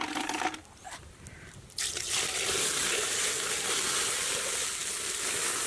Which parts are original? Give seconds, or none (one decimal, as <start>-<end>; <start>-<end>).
0.0-0.6; 1.9-5.7